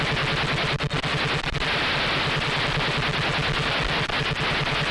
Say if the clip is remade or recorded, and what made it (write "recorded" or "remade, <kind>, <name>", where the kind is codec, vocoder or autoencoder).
recorded